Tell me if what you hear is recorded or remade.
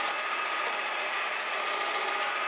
recorded